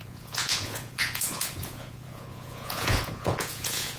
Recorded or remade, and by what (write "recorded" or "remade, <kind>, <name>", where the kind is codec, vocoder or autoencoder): remade, vocoder, Vocos